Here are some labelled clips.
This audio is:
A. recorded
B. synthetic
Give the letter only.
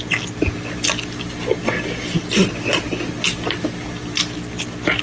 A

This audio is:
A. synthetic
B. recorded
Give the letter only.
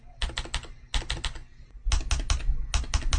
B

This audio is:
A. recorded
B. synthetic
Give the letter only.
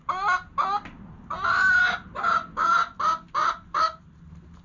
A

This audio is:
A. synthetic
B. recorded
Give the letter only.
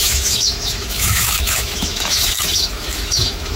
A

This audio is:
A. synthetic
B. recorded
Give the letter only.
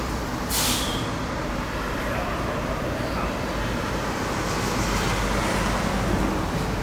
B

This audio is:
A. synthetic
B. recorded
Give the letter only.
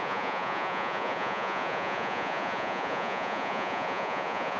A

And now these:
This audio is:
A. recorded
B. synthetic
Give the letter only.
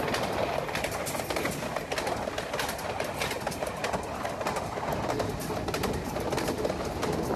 A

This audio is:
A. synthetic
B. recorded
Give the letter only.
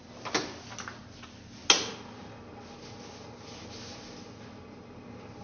B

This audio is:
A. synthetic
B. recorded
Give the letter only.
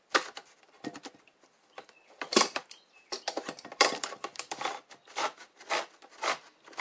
A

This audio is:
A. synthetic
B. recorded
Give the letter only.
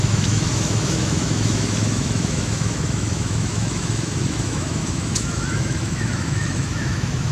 A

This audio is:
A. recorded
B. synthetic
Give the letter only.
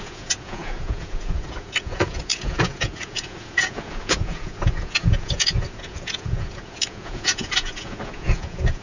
B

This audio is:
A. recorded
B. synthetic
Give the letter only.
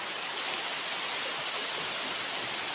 A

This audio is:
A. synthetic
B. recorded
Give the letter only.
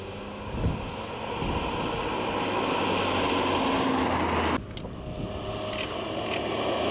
B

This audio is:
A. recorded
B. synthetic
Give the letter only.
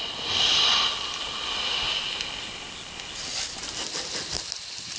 A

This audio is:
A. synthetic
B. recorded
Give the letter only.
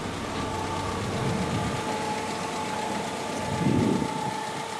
B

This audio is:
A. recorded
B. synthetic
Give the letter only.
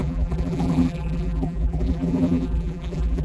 B